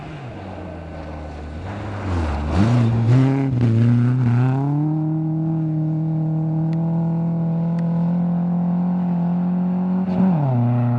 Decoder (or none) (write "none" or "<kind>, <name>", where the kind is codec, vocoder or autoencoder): none